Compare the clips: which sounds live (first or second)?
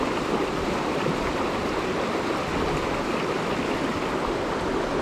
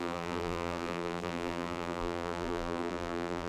first